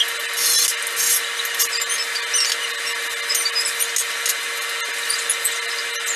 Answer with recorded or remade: recorded